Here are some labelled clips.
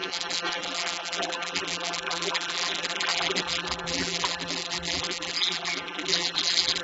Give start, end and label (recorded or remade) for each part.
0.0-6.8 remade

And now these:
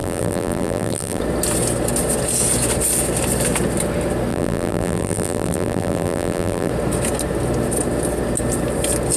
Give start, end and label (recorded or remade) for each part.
0.0-1.2 remade; 1.2-4.3 recorded; 4.3-6.7 remade; 6.7-9.2 recorded

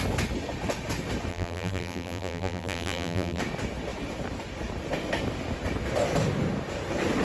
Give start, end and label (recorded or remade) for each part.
0.0-1.3 recorded; 1.3-3.4 remade; 3.4-7.2 recorded

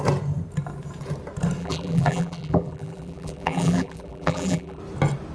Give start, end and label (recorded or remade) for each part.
0.0-1.6 recorded; 1.6-4.8 remade; 4.8-5.3 recorded